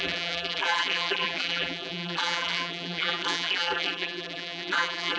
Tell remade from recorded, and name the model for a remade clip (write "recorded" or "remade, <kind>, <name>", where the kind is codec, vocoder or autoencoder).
remade, vocoder, BigVGAN v2